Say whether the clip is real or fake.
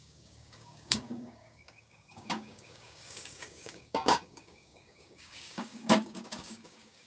fake